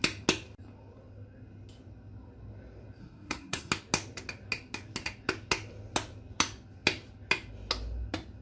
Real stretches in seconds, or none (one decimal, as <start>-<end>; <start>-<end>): 0.0-3.0; 3.7-8.4